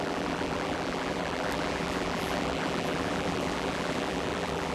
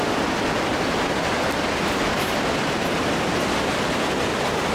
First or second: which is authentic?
second